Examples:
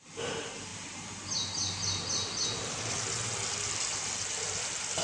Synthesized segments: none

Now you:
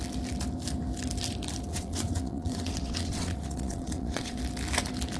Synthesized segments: 1.7-4.4 (vocoder, WaveNeXt)

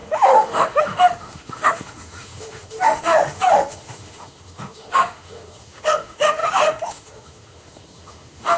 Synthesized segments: 0.0-8.6 (autoencoder, DAC-VAE)

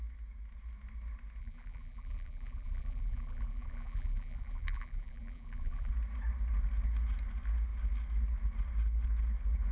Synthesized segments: 1.4-5.9 (vocoder, BigVGAN v2)

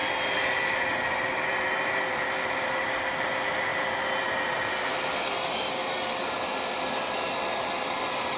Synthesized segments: 0.0-2.7 (vocoder, BigVGAN v2); 3.7-4.7; 5.8-8.4

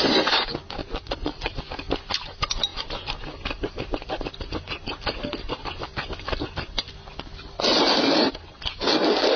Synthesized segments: 0.8-1.6 (vocoder, Vocos)